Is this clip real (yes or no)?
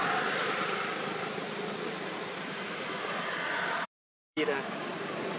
no